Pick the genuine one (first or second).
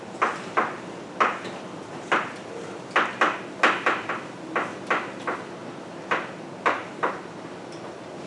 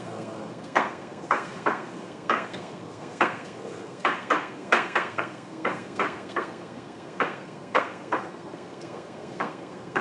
first